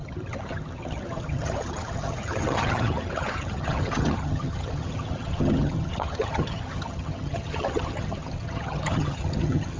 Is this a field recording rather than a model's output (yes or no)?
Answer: no